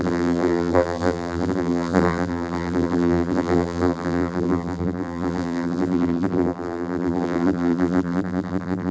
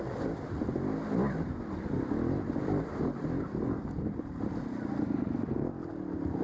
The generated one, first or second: first